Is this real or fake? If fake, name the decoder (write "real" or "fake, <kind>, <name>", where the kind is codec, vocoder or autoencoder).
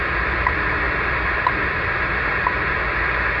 real